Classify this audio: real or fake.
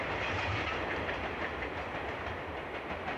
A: real